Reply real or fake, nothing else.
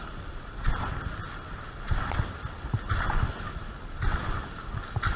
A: real